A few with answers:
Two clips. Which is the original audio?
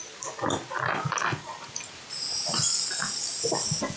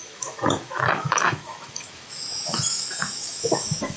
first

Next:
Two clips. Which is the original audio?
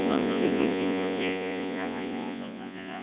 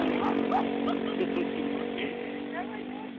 second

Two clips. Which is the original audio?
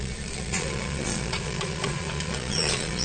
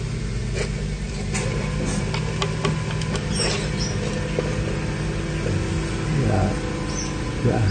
second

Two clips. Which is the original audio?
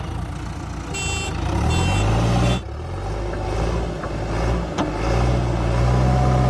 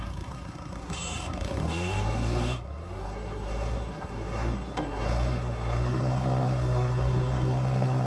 first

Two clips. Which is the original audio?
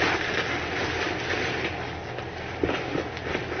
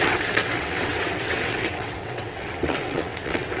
first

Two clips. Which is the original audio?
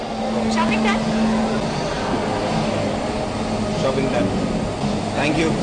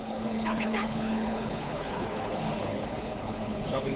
first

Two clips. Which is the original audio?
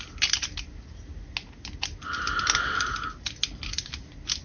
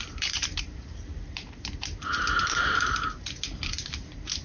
first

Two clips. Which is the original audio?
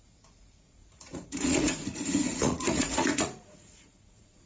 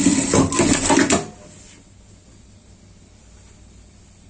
second